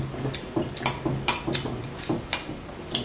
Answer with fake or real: real